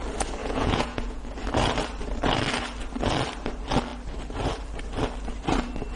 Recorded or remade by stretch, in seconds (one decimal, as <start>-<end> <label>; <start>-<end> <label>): 0.0-0.4 recorded; 0.4-1.3 remade; 1.3-6.0 recorded